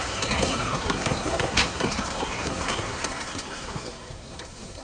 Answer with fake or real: fake